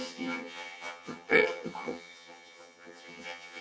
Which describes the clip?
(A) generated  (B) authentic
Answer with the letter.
A